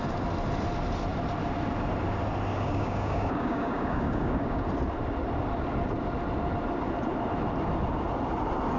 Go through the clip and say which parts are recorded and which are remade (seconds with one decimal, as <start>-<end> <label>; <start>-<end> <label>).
0.0-2.5 recorded; 2.5-4.6 remade; 4.6-8.8 recorded